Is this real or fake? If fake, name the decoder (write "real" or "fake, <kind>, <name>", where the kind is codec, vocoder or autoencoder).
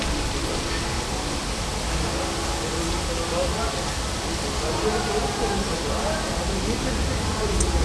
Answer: real